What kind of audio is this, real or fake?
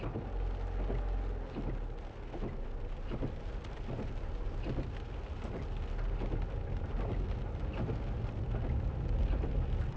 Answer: real